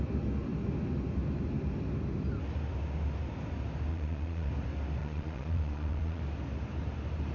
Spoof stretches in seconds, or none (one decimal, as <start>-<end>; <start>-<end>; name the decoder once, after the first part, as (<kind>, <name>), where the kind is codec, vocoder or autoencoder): 3.9-4.5 (vocoder, Vocos); 5.0-6.2

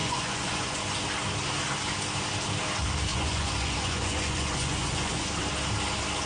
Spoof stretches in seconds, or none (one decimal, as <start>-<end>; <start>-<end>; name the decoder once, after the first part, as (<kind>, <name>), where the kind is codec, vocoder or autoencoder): 0.0-0.8 (vocoder, Vocos); 3.1-5.3